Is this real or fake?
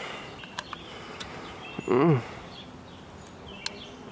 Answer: real